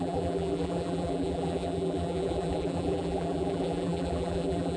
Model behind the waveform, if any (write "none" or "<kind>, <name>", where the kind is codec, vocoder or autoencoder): vocoder, BigVGAN v2